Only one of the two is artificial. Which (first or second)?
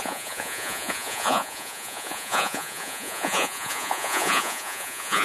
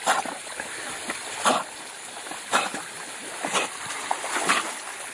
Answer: first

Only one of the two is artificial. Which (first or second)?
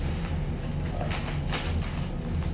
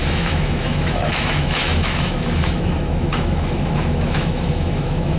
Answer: second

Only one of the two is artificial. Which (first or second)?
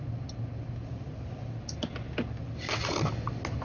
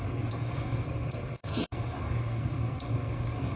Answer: second